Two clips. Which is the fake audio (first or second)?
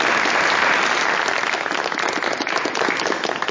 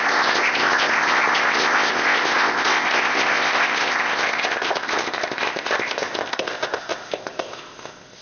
second